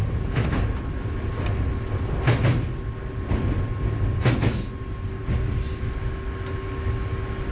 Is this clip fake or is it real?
real